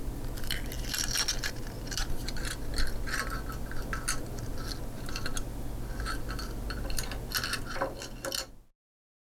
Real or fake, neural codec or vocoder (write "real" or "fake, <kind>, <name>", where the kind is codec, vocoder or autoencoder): real